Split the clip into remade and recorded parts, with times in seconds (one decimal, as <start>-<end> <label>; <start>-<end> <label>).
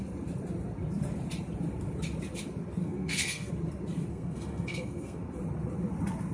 0.0-2.8 recorded; 2.8-3.5 remade; 3.5-4.1 recorded; 4.1-5.2 remade; 5.2-6.3 recorded